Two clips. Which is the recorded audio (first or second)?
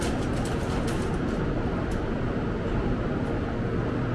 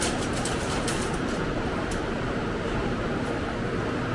first